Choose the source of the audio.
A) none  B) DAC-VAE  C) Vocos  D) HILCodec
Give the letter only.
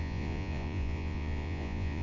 C